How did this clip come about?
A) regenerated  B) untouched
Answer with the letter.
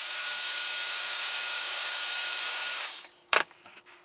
A